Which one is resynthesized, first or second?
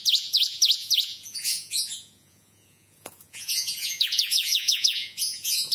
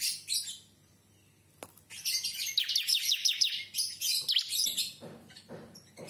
first